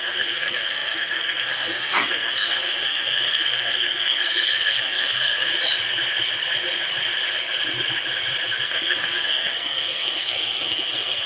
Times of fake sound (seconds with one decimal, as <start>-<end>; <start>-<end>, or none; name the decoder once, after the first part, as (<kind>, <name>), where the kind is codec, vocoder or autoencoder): 0.0-5.5 (codec, SNAC); 8.6-11.3